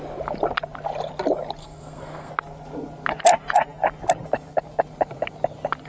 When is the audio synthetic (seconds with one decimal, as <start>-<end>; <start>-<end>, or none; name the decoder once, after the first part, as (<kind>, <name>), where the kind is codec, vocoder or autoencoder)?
1.6-2.3 (codec, SNAC)